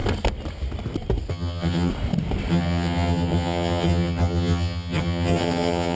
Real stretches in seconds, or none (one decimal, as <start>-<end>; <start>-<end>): 0.0-1.3; 1.9-2.5